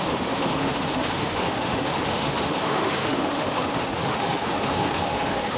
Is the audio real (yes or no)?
no